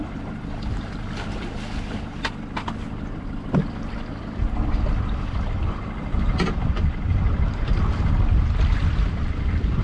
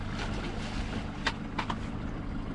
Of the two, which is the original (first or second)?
second